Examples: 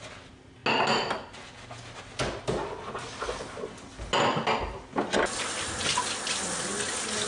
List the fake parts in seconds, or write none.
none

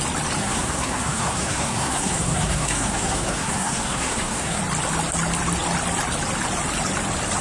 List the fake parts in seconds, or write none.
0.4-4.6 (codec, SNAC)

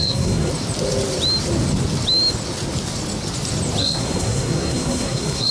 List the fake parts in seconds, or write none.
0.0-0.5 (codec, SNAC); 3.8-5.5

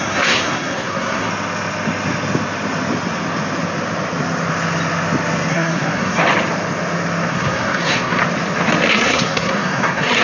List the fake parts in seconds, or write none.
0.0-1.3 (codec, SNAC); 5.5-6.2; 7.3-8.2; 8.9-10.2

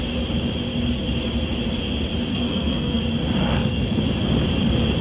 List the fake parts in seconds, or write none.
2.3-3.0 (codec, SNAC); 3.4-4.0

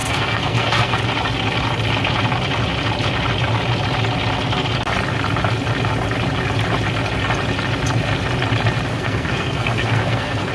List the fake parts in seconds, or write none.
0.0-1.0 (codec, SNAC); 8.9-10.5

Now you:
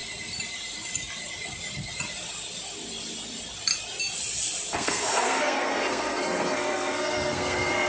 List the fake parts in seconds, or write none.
4.7-7.9 (codec, SNAC)

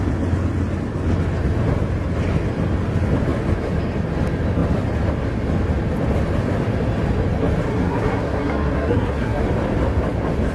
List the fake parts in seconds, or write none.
7.7-9.4 (codec, SNAC)